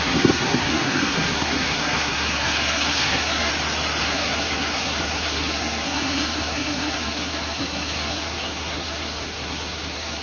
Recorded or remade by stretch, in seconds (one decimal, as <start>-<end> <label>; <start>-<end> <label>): 0.0-3.5 remade; 3.5-4.0 recorded; 4.0-10.2 remade